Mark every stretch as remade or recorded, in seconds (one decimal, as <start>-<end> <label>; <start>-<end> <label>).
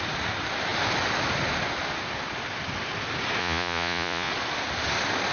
0.0-3.4 recorded; 3.4-4.3 remade; 4.3-5.3 recorded